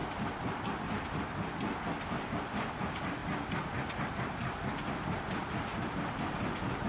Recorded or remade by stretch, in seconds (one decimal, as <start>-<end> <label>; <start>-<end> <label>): 0.0-0.6 recorded; 0.6-6.9 remade

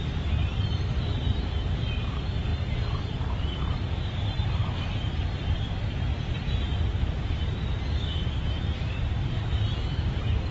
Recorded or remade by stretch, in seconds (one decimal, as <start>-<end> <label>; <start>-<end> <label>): 0.0-2.5 remade; 2.5-3.0 recorded; 3.0-10.5 remade

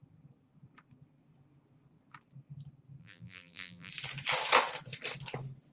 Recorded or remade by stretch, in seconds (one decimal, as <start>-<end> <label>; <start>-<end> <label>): 0.0-3.0 recorded; 3.0-3.9 remade; 3.9-5.7 recorded